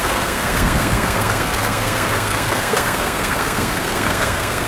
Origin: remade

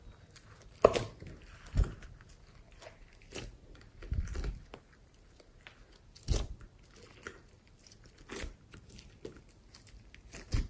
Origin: recorded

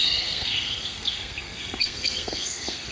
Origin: remade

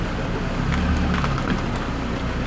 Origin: recorded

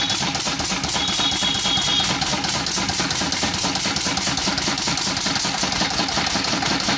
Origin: recorded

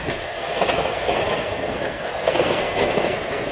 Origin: remade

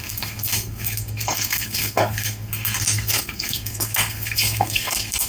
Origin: remade